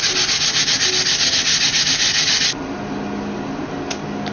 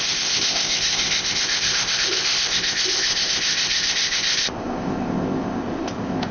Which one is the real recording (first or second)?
first